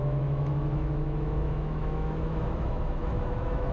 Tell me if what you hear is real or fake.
fake